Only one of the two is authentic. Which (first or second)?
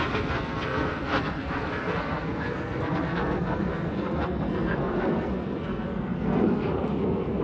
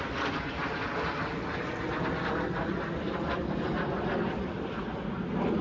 second